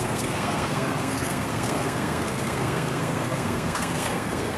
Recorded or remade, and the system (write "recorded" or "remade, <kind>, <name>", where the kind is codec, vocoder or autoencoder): remade, codec, SNAC